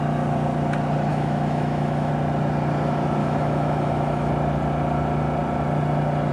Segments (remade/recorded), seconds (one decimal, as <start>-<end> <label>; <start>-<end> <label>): 0.0-1.1 recorded; 1.1-2.1 remade; 2.1-3.2 recorded; 3.2-4.3 remade; 4.3-6.3 recorded